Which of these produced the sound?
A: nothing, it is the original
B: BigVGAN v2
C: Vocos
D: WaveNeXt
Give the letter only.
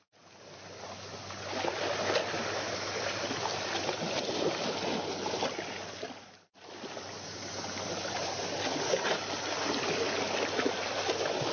A